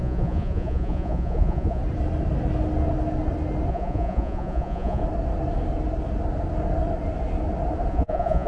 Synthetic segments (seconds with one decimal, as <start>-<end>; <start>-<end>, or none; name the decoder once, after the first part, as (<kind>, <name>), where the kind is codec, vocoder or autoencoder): 0.0-1.8 (vocoder, Vocos); 3.7-5.0; 7.9-8.5